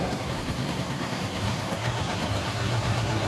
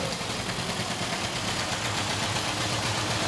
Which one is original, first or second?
second